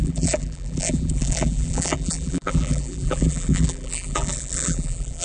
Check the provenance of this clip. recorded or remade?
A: remade